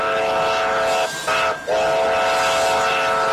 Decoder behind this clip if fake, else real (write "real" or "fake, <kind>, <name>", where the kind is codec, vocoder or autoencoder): real